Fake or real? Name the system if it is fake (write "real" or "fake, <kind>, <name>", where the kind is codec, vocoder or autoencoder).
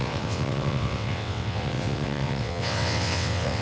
fake, vocoder, WaveNeXt